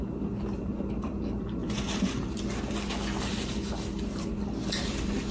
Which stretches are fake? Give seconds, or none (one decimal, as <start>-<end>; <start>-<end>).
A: none